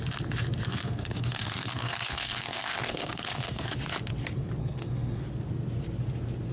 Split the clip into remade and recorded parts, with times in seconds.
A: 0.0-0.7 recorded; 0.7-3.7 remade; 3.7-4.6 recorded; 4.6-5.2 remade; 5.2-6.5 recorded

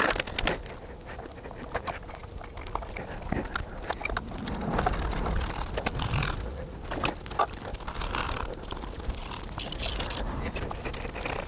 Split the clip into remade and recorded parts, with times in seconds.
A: 0.0-11.5 recorded

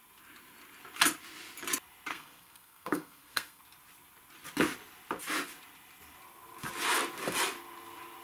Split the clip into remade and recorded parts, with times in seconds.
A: 0.0-2.1 recorded; 2.1-3.6 remade; 3.6-8.2 recorded

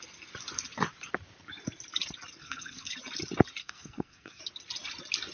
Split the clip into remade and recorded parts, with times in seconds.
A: 0.0-2.4 recorded; 2.4-2.9 remade; 2.9-3.6 recorded; 3.6-4.4 remade; 4.4-5.3 recorded

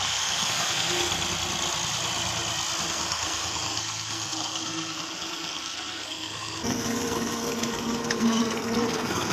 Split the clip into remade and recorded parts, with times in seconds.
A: 0.0-1.1 remade; 1.1-2.9 recorded; 2.9-9.3 remade

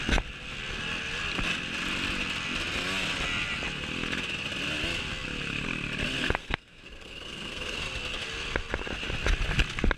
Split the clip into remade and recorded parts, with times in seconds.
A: 0.0-6.4 recorded; 6.4-7.8 remade; 7.8-10.0 recorded